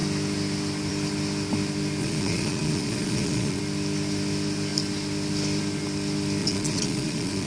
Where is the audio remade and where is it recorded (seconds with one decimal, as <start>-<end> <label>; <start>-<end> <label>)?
0.0-2.0 recorded; 2.0-3.6 remade; 3.6-6.4 recorded; 6.4-7.5 remade